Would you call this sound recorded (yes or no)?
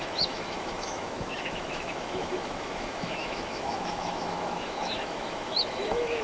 no